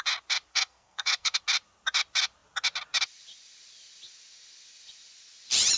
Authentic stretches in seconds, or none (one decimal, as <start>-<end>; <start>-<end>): 0.0-0.5; 1.4-5.8